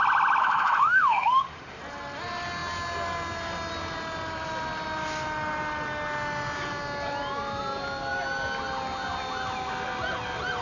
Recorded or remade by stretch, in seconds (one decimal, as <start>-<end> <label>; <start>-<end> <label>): 0.0-0.4 recorded; 0.4-1.8 remade; 1.8-10.6 recorded